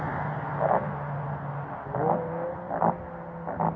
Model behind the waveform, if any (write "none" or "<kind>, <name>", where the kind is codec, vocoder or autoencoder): none